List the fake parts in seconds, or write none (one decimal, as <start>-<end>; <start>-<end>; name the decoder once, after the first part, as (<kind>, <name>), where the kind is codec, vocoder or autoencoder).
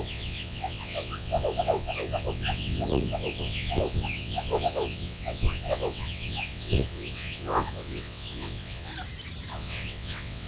0.0-8.9 (vocoder, WaveNeXt); 9.5-10.5